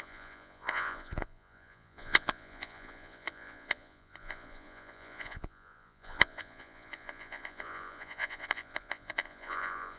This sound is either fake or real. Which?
fake